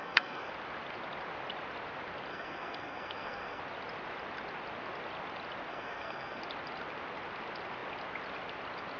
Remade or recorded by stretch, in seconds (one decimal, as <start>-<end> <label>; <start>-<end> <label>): 0.0-0.5 remade; 0.5-2.3 recorded; 2.3-3.6 remade; 3.6-5.7 recorded; 5.7-6.4 remade; 6.4-9.0 recorded